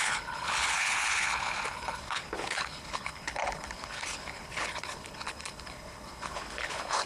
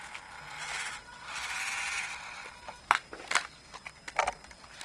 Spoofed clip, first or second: first